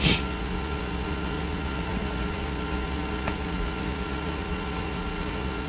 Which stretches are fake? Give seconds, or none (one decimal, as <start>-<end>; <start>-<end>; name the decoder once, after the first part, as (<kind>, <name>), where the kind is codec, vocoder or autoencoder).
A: 0.0-5.7 (vocoder, Vocos)